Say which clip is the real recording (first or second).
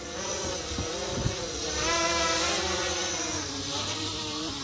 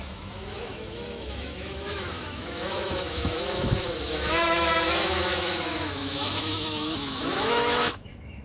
first